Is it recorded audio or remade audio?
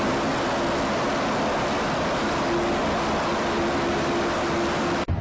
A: recorded